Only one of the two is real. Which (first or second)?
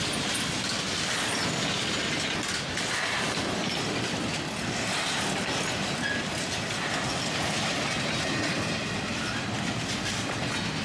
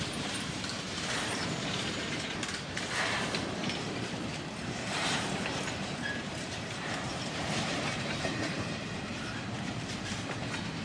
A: first